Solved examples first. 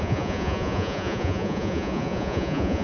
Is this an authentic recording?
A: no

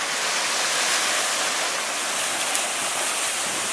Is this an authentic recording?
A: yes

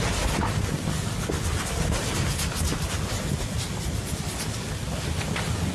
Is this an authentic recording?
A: yes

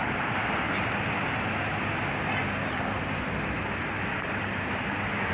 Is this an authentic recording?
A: yes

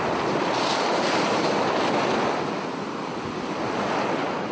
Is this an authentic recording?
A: yes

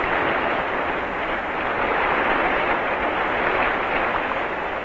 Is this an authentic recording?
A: no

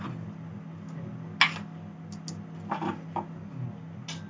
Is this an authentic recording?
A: yes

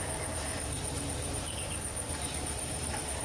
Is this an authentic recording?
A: no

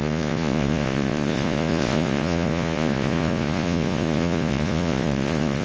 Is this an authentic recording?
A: no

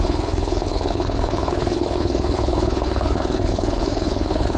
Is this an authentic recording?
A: no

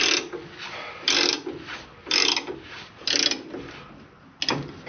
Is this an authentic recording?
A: yes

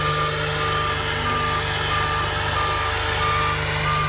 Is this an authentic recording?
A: yes